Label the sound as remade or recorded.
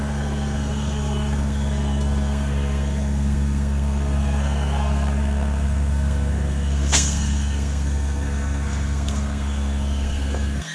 remade